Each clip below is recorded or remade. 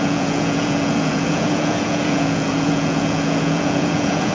remade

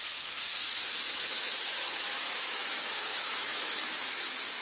remade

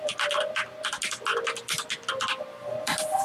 recorded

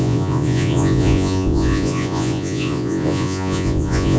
remade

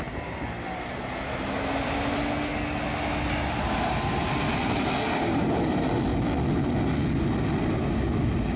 recorded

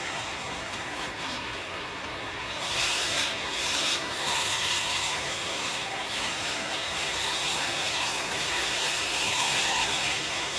remade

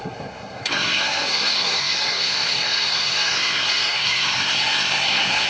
remade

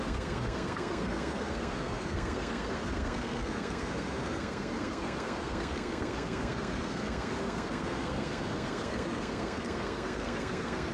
remade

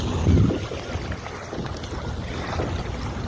recorded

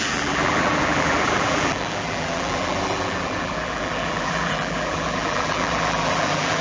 remade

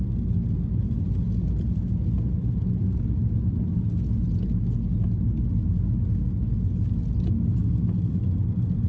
recorded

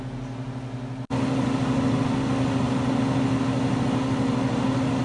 recorded